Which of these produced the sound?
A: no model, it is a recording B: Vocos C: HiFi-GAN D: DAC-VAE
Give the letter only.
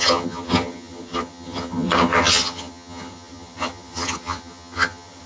C